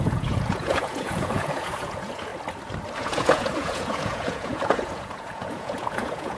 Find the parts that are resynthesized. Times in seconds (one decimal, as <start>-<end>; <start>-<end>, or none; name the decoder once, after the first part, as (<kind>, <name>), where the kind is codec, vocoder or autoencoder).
0.0-2.3 (vocoder, Vocos); 3.0-6.4